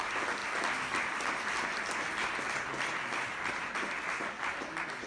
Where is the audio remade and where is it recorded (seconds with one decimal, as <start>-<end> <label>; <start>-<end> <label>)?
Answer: 0.0-5.1 recorded